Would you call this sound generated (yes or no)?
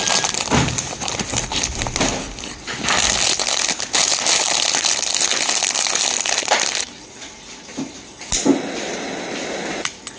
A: no